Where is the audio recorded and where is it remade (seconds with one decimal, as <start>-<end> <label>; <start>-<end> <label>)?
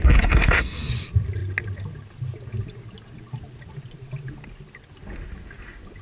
0.0-0.9 remade; 0.9-6.0 recorded